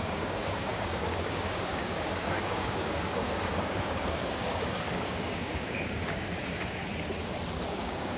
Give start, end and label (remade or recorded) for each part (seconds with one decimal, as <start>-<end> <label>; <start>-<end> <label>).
0.0-6.8 remade; 6.8-7.7 recorded; 7.7-8.2 remade